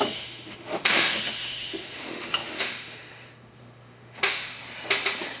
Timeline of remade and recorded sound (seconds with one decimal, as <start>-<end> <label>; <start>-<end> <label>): 0.0-4.5 remade; 4.5-5.4 recorded